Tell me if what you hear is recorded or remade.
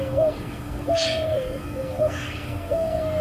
remade